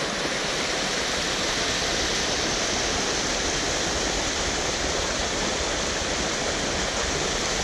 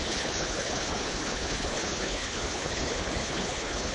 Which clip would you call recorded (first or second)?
first